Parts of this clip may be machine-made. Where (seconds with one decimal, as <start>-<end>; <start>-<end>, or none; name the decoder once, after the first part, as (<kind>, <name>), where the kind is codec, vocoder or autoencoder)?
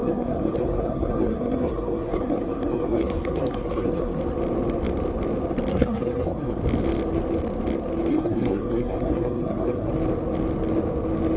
0.0-4.2 (codec, SNAC); 5.7-6.6; 8.1-9.9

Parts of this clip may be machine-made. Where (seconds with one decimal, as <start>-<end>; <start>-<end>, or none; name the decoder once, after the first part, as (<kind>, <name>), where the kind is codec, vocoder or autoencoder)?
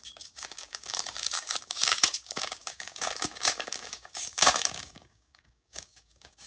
0.0-6.5 (codec, DAC)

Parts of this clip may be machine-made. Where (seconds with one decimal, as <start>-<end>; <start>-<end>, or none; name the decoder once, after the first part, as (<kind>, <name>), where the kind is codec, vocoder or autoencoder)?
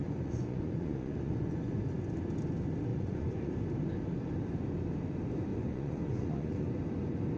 0.0-1.8 (vocoder, Vocos); 2.9-3.5; 5.5-6.8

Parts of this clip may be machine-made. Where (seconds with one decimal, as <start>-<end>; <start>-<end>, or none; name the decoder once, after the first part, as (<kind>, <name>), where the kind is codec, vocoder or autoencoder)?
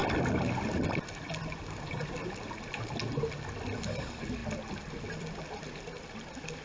none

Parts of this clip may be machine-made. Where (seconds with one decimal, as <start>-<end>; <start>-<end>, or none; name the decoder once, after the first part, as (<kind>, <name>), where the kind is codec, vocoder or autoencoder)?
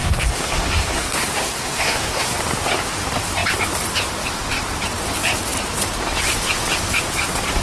0.0-2.4 (codec, SNAC)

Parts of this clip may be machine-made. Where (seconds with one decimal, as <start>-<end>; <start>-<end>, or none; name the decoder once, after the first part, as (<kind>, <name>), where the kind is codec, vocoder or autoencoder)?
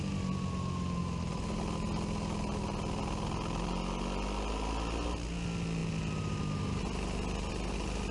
none